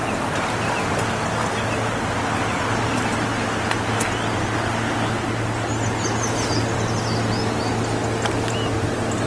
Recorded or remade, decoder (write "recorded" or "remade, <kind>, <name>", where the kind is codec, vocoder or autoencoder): recorded